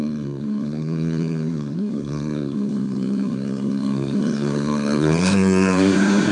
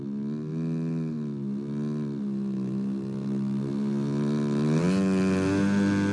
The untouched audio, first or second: second